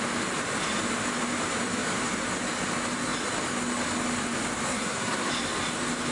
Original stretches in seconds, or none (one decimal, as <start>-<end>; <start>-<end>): 0.0-4.7; 5.3-6.1